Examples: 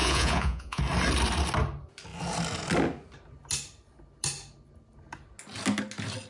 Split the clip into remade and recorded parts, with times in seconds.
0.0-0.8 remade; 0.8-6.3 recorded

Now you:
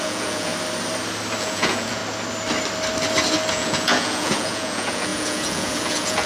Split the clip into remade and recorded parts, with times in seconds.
0.0-0.5 remade; 0.5-1.4 recorded; 1.4-2.0 remade; 2.0-3.5 recorded; 3.5-6.3 remade

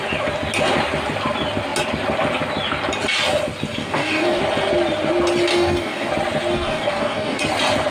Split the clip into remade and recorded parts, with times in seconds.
0.0-3.8 recorded; 3.8-4.4 remade; 4.4-5.5 recorded; 5.5-6.1 remade; 6.1-6.5 recorded; 6.5-7.4 remade; 7.4-7.9 recorded

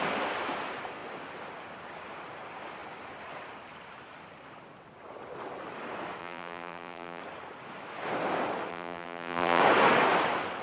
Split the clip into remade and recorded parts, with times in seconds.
0.0-6.2 recorded; 6.2-7.2 remade; 7.2-8.7 recorded; 8.7-9.6 remade; 9.6-10.6 recorded

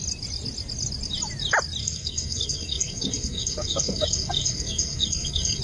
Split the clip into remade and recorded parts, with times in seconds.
0.0-1.8 recorded; 1.8-5.6 remade